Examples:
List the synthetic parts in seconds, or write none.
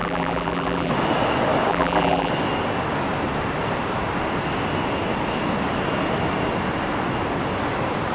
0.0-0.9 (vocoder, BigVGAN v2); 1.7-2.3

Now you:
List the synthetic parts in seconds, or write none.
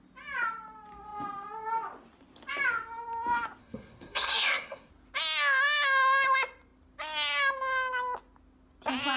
3.6-4.9 (codec, SNAC)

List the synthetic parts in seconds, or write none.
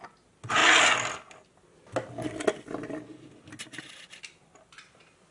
none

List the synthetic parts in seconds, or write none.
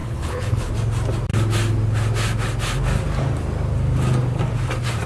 0.0-0.7 (codec, HILCodec)